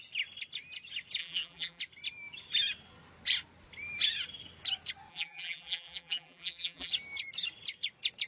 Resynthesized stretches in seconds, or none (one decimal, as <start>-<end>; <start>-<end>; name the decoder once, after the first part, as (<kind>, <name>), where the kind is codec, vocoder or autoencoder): 1.2-1.8 (vocoder, BigVGAN v2); 5.1-6.9